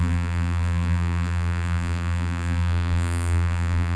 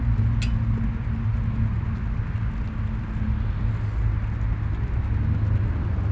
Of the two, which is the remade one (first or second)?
first